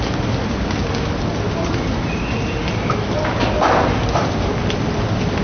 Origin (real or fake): real